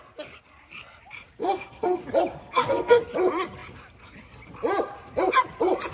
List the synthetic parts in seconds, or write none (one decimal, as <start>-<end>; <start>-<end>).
1.4-2.0; 2.4-3.0